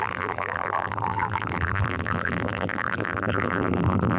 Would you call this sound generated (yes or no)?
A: yes